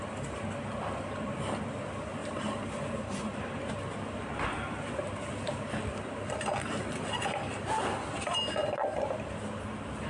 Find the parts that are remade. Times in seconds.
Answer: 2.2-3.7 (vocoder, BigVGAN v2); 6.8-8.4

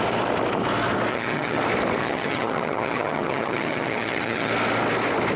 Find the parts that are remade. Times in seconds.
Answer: 1.1-1.6 (vocoder, HiFi-GAN); 2.0-4.5